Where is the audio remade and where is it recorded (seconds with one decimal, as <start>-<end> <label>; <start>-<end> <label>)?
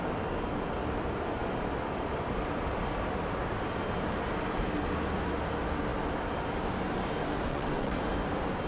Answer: 0.0-7.5 recorded; 7.5-8.0 remade; 8.0-8.7 recorded